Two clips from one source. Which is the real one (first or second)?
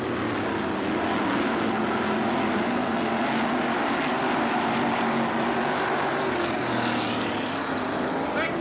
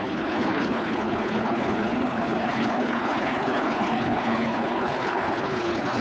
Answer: first